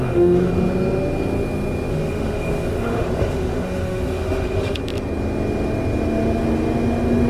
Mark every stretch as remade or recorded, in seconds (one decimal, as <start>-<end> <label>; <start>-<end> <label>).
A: 0.0-0.5 remade; 0.5-1.9 recorded; 1.9-4.8 remade; 4.8-7.3 recorded